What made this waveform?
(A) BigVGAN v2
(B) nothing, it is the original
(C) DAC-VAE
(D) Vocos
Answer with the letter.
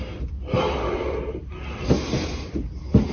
B